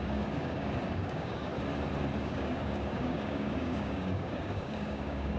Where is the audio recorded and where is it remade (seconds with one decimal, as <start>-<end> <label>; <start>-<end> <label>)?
0.0-1.5 remade; 1.5-2.2 recorded; 2.2-5.4 remade